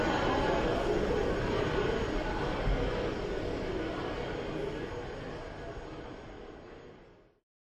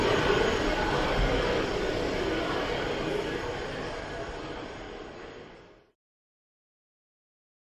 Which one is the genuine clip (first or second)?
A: first